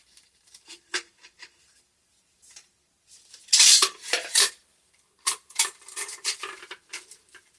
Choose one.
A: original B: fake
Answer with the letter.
B